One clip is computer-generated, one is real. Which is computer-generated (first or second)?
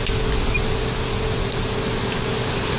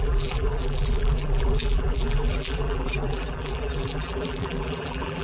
second